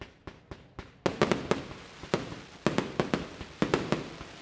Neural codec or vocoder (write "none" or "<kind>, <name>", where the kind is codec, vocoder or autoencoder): none